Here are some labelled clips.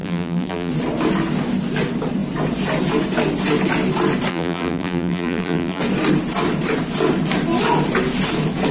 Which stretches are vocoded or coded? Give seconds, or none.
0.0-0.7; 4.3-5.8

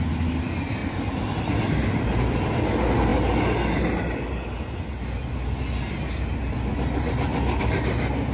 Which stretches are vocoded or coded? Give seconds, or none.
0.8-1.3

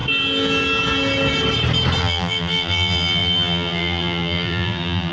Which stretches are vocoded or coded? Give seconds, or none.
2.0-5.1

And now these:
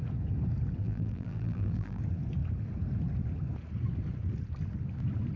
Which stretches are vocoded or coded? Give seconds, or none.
0.8-2.0